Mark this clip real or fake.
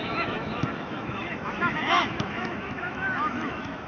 fake